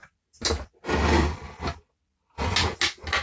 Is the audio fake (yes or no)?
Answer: no